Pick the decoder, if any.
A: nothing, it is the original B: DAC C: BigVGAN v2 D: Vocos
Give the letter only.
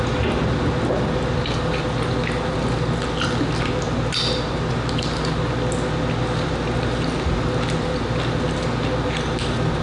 A